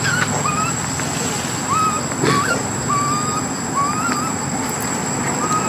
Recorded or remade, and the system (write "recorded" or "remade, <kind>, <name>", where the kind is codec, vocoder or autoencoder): recorded